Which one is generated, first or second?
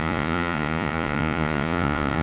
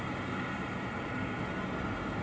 first